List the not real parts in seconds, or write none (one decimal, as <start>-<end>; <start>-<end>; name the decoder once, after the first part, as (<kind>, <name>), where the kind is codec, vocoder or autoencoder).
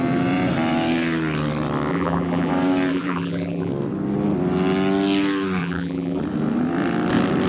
1.9-2.5 (vocoder, BigVGAN v2); 2.9-3.7; 5.6-6.2